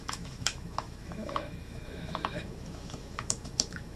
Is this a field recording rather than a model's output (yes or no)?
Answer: no